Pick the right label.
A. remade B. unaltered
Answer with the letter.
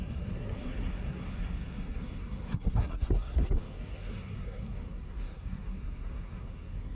A